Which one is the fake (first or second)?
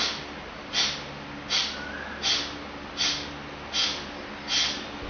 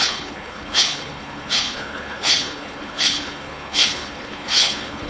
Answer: second